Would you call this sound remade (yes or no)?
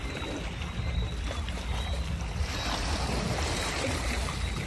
no